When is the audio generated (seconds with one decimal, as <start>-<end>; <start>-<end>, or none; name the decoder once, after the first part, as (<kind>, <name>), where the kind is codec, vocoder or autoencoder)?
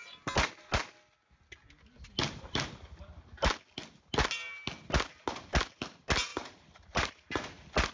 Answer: 6.3-7.1 (vocoder, BigVGAN v2)